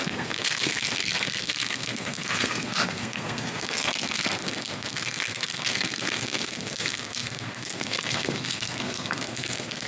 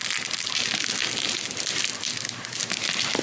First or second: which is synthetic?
first